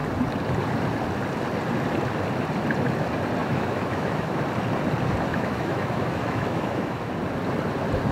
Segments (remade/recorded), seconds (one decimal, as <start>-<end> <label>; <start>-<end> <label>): 0.0-3.4 recorded; 3.4-4.4 remade; 4.4-5.3 recorded; 5.3-7.1 remade; 7.1-8.1 recorded